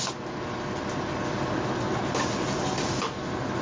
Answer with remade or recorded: recorded